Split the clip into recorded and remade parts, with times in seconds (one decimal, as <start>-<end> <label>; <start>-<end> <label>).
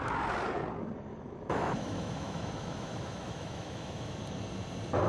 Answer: 0.0-1.1 recorded; 1.1-4.2 remade; 4.2-5.1 recorded